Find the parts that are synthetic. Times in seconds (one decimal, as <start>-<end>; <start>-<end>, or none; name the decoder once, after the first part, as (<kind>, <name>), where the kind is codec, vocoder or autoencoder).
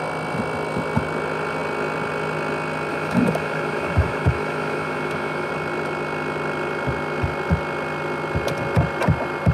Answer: 2.9-5.5 (autoencoder, DAC-VAE)